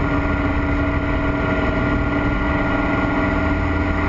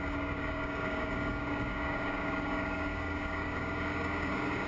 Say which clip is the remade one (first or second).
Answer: second